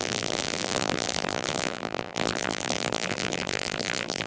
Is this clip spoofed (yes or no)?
yes